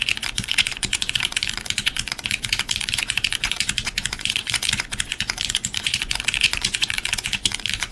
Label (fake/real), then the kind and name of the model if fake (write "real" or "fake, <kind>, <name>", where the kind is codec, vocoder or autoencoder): fake, vocoder, Vocos